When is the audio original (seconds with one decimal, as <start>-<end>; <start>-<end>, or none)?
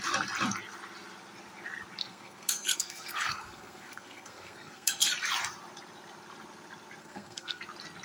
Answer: 0.0-2.0; 5.1-7.0; 7.6-8.0